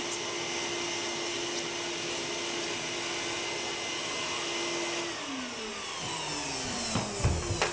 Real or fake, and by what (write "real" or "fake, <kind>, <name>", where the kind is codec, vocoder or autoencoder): real